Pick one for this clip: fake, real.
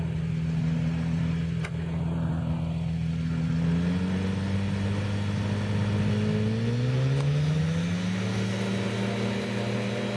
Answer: real